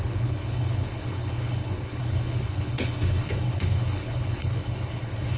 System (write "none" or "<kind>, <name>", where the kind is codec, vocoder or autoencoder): codec, HILCodec